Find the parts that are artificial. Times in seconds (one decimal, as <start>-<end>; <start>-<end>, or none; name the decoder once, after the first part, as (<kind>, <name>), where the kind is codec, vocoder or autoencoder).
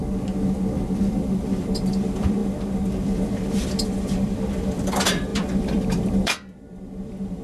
1.1-7.4 (vocoder, BigVGAN v2)